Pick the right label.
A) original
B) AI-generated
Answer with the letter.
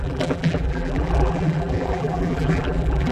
B